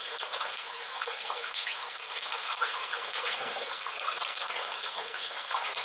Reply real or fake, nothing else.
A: fake